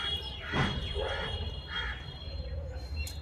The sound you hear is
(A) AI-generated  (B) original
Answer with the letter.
B